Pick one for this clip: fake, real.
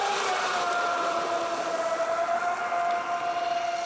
real